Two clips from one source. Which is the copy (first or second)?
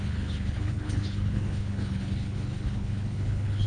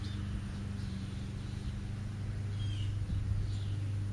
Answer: first